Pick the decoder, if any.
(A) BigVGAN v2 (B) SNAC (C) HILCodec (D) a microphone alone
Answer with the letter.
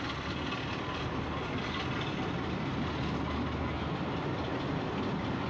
D